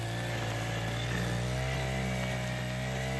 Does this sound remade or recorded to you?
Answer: recorded